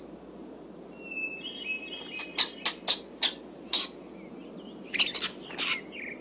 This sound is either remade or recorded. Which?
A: recorded